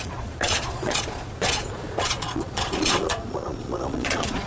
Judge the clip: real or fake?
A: fake